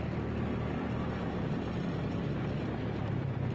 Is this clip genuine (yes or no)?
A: yes